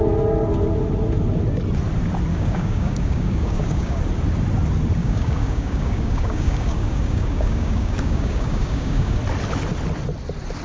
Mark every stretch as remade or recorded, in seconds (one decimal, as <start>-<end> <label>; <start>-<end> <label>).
0.0-2.3 recorded; 2.3-4.0 remade; 4.0-5.0 recorded; 5.0-9.2 remade; 9.2-10.6 recorded